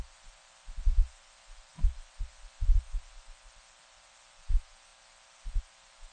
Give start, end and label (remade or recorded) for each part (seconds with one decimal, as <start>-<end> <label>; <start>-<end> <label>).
0.0-6.1 recorded